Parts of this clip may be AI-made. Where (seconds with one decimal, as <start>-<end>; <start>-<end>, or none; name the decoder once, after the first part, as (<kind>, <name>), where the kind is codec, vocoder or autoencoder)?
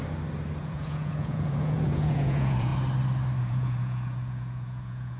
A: 0.6-2.7 (vocoder, Vocos); 3.4-5.2